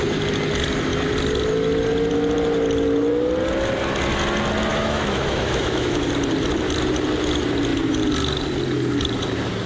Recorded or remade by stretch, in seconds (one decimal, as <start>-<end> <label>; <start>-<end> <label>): 0.0-4.7 recorded; 4.7-6.1 remade; 6.1-9.7 recorded